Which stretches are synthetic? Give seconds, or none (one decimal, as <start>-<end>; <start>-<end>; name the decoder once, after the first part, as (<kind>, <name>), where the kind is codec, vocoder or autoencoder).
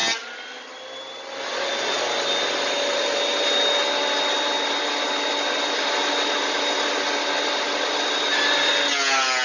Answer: none